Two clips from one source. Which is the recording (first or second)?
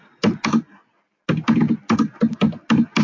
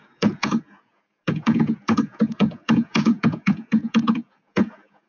first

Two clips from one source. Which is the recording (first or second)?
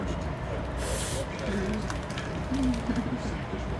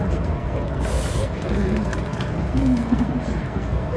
first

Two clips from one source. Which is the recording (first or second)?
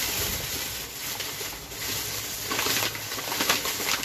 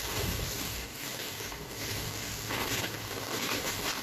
first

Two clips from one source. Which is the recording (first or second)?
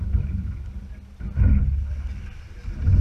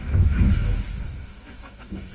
first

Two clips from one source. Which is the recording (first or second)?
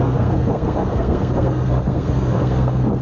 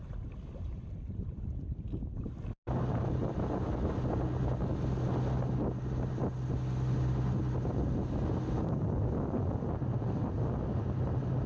second